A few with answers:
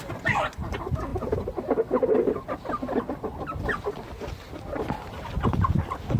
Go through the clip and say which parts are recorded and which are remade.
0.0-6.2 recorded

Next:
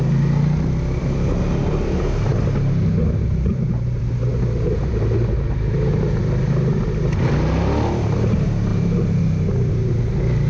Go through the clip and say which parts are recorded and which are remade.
0.0-10.5 recorded

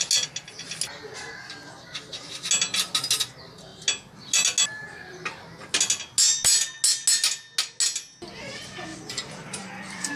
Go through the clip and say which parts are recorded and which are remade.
0.0-8.9 recorded; 8.9-10.2 remade

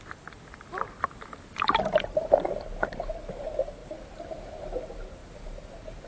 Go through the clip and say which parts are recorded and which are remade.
0.0-3.8 recorded; 3.8-4.7 remade; 4.7-6.1 recorded

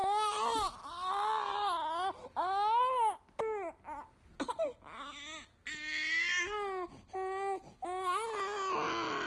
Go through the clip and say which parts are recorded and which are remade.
0.0-0.8 remade; 0.8-9.3 recorded

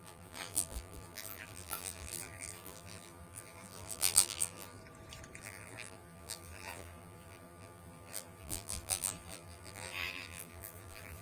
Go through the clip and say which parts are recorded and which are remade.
0.0-4.8 remade; 4.8-5.4 recorded; 5.4-11.2 remade

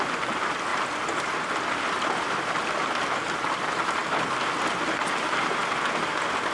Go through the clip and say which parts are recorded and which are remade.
0.0-6.5 recorded